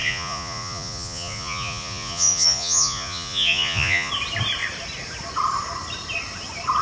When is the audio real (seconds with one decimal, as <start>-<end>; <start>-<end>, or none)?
4.1-6.8